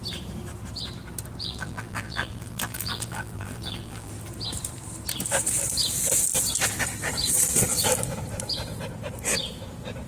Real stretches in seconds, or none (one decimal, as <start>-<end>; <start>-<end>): 0.0-1.4; 4.1-10.1